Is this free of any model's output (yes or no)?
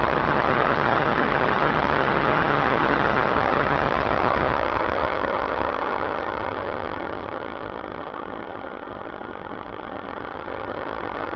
no